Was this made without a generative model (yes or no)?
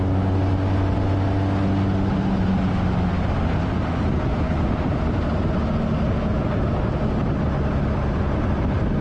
yes